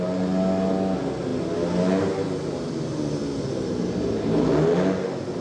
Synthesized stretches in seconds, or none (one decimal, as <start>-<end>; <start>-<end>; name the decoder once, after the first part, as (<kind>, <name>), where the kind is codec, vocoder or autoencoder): none